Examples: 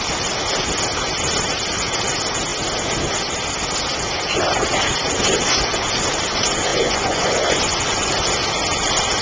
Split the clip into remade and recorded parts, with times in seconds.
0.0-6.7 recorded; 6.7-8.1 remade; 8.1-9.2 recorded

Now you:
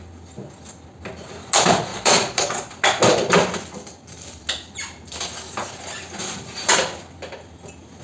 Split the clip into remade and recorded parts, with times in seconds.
0.0-1.9 recorded; 1.9-2.7 remade; 2.7-8.0 recorded

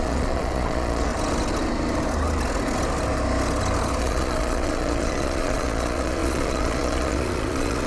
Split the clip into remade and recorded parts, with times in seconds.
0.0-1.1 remade; 1.1-4.0 recorded; 4.0-7.9 remade